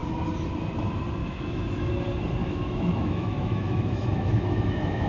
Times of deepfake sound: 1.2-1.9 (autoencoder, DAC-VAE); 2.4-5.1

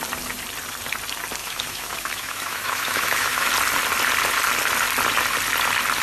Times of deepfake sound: 1.4-3.5 (autoencoder, DAC-VAE)

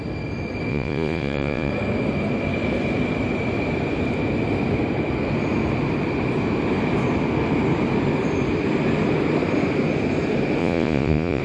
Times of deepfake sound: 0.7-1.7 (vocoder, Vocos); 10.6-11.4

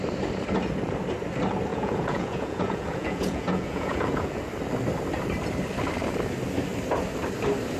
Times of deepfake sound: 1.7-4.4 (vocoder, Vocos)

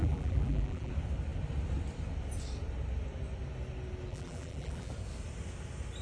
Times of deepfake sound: 0.0-0.9 (vocoder, BigVGAN v2); 4.1-4.9

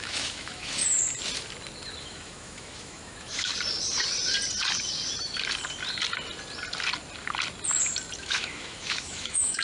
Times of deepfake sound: 0.0-0.8 (autoencoder, DAC-VAE); 2.0-3.5; 8.2-9.6

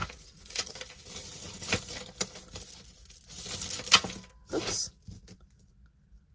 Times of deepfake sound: 0.0-0.7 (vocoder, Vocos)